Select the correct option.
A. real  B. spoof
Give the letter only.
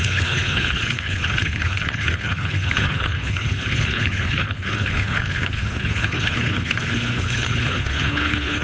B